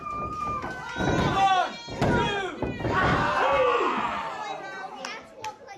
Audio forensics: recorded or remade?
recorded